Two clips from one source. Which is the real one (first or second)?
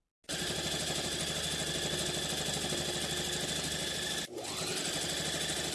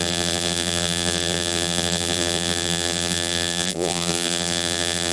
first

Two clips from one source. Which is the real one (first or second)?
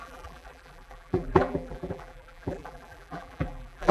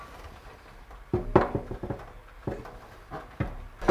second